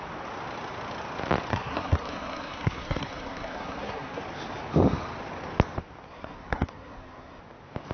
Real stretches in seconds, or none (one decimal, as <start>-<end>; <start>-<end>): 0.0-1.5; 4.2-6.1; 7.4-7.9